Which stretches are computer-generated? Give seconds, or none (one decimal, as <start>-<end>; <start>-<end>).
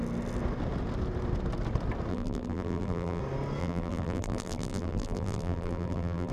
2.1-3.2; 3.6-6.3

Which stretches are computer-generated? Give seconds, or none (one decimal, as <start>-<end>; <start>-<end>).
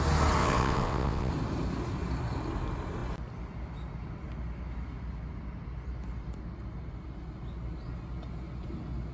0.4-1.3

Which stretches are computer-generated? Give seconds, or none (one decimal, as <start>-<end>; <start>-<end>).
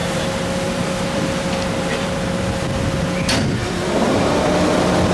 0.0-2.8; 3.6-4.4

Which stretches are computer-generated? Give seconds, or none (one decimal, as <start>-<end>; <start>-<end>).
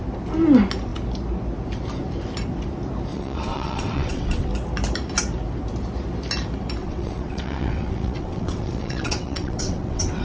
3.1-4.5; 6.8-10.2